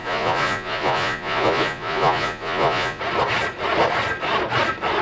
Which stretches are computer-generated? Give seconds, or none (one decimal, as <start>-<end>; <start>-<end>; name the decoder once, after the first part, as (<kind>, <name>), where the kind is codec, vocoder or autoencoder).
0.0-3.0 (vocoder, Vocos)